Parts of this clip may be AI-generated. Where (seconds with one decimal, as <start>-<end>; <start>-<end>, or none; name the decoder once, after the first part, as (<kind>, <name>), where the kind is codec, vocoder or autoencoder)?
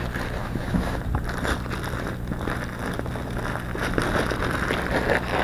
0.4-1.0 (autoencoder, DAC-VAE)